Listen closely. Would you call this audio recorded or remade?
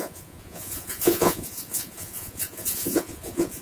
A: remade